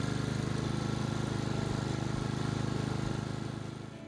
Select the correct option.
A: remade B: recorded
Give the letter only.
B